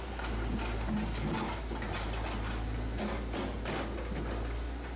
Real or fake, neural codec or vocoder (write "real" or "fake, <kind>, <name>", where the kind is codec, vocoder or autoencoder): real